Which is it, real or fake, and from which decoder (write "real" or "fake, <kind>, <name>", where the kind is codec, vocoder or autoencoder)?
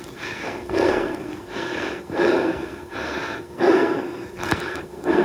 fake, codec, SNAC